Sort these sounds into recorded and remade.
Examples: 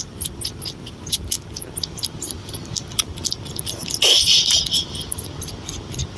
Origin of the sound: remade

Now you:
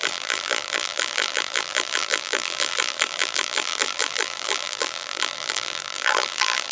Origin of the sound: remade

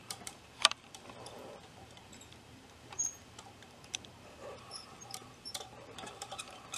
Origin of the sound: remade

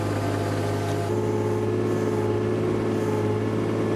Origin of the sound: recorded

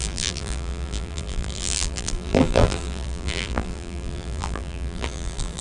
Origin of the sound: remade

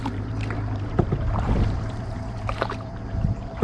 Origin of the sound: remade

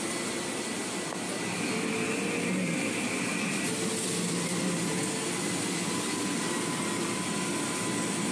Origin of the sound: recorded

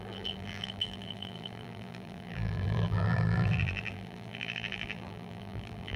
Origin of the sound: remade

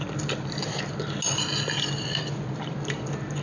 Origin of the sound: recorded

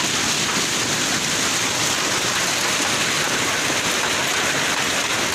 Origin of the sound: recorded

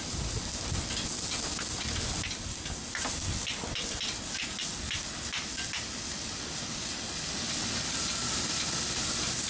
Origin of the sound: recorded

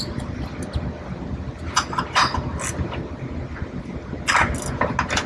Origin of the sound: recorded